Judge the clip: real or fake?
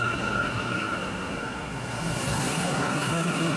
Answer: fake